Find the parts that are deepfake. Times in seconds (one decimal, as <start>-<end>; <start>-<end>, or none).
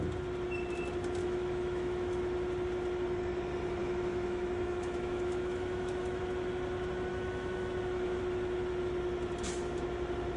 1.2-2.2; 3.8-6.2; 7.1-8.2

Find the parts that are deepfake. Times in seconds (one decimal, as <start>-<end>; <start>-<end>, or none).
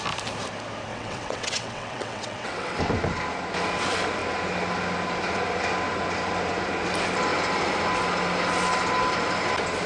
0.9-2.8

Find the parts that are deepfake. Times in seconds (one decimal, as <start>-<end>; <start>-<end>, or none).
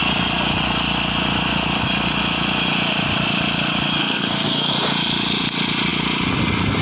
4.0-4.7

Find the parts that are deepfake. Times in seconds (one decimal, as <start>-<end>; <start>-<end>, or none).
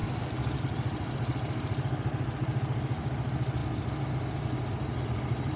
0.0-0.6